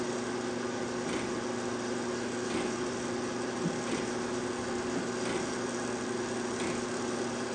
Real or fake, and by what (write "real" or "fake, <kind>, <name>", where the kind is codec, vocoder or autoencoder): real